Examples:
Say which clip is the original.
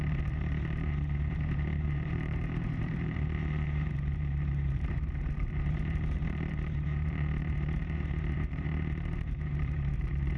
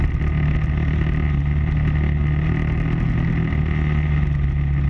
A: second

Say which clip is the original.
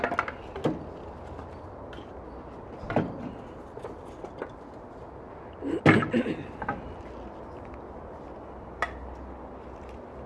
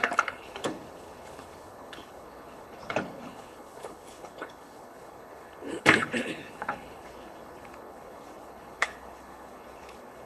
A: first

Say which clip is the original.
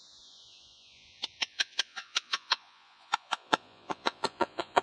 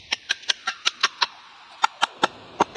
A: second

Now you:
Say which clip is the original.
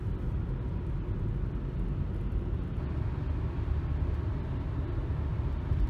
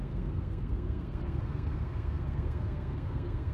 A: first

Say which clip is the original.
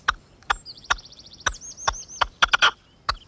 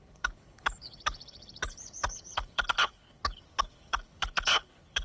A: first